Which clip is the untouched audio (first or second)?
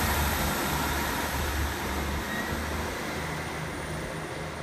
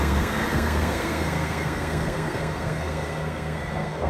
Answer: first